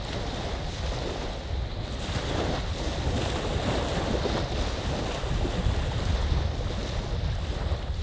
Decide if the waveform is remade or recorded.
recorded